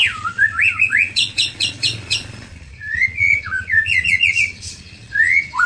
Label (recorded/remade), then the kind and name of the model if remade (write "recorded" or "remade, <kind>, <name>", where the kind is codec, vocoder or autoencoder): remade, vocoder, Vocos